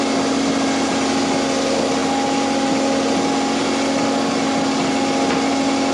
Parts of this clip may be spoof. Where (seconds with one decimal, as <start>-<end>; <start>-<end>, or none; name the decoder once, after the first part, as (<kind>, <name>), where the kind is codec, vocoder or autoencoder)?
none